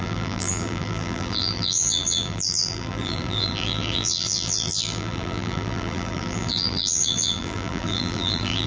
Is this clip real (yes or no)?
no